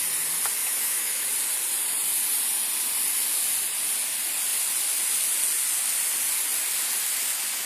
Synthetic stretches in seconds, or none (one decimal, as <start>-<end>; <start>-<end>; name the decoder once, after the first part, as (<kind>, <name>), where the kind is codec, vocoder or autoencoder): 0.6-1.3 (autoencoder, DAC-VAE)